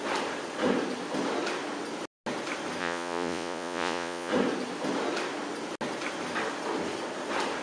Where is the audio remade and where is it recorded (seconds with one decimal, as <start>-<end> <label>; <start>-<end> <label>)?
0.0-2.8 recorded; 2.8-4.3 remade; 4.3-7.6 recorded